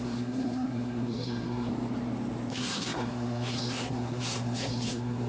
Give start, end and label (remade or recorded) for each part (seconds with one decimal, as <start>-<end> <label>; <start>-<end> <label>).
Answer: 0.0-1.7 remade; 1.7-2.5 recorded; 2.5-5.3 remade